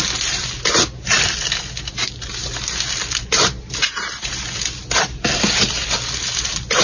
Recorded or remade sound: recorded